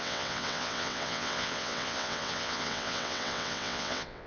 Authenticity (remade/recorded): remade